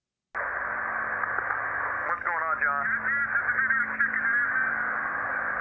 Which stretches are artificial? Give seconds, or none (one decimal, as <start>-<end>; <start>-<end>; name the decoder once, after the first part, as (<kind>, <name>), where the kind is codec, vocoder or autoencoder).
none